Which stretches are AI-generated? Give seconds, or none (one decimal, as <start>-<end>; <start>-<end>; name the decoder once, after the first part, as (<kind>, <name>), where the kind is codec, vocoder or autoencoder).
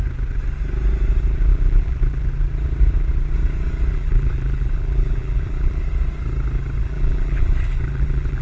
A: 1.5-2.3 (vocoder, BigVGAN v2); 3.9-5.8; 6.8-8.4